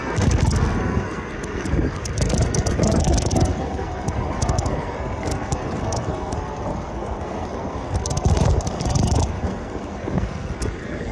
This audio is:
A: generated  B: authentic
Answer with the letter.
A